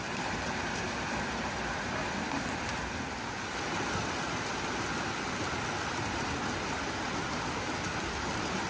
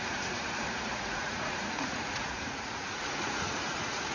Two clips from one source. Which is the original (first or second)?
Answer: first